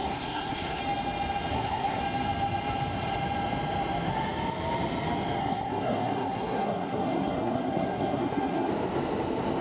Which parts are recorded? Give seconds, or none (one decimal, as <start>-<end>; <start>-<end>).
0.8-1.5; 2.0-5.4; 8.7-9.6